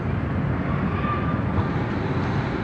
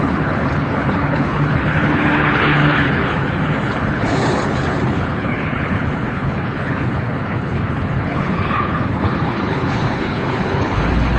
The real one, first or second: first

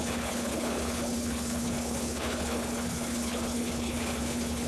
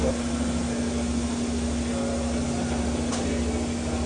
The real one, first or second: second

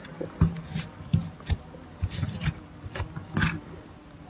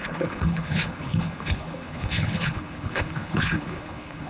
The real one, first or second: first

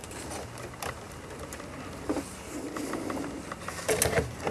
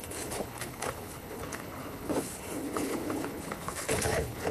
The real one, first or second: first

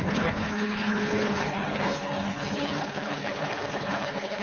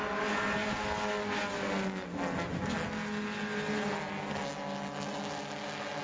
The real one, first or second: second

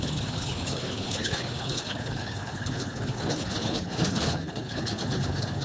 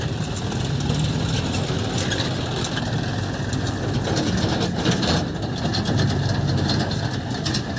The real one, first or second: second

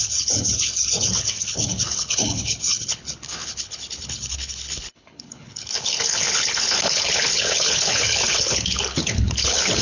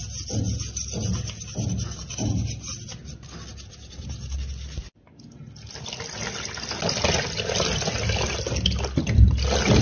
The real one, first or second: second